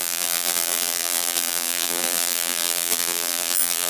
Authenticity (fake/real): fake